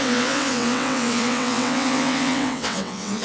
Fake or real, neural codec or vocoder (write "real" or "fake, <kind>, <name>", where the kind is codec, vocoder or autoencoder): fake, vocoder, WaveNeXt